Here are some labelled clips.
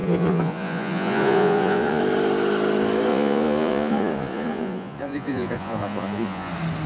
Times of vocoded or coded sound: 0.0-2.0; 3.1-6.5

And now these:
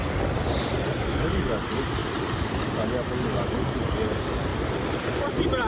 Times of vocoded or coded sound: 0.0-1.4; 4.5-5.7

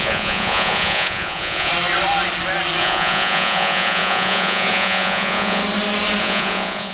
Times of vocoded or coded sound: 0.0-1.7; 2.8-5.6; 6.2-6.9

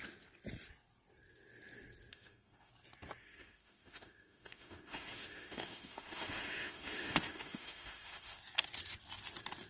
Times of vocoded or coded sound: 2.1-2.7; 3.2-8.4

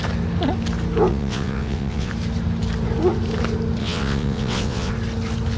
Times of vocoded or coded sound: 1.1-2.1; 3.8-4.9

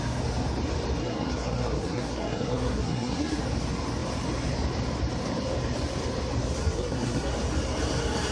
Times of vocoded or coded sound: 1.0-3.4; 6.6-7.3